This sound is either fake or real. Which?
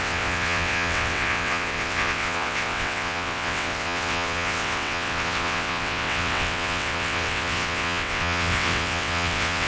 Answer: fake